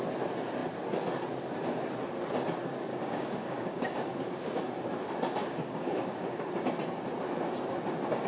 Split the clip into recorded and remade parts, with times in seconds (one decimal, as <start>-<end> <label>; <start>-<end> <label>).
0.0-2.9 recorded; 2.9-4.6 remade; 4.6-5.4 recorded; 5.4-6.4 remade; 6.4-8.3 recorded